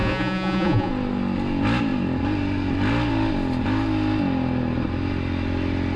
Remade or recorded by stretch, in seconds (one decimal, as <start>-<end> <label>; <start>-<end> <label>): 0.0-0.9 remade; 0.9-6.0 recorded